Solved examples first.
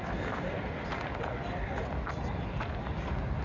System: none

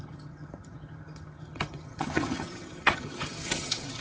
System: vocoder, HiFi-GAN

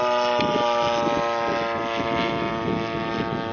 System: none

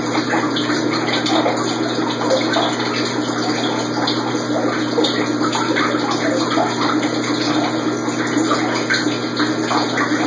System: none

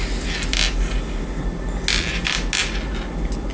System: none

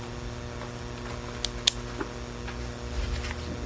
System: none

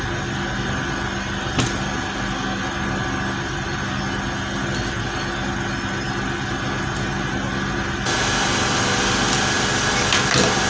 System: none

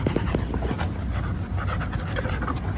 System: none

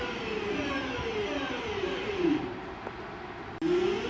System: none